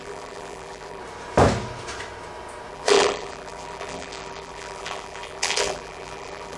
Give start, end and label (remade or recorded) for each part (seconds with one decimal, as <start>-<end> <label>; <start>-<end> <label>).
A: 0.0-1.0 remade; 1.0-2.7 recorded; 2.7-6.6 remade